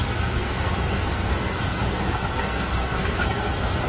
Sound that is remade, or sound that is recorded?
remade